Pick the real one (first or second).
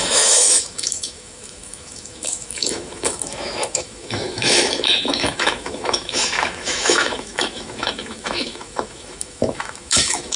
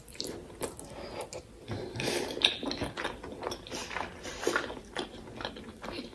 second